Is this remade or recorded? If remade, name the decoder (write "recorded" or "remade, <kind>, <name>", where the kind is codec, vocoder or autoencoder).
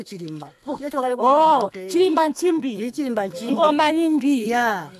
remade, codec, SNAC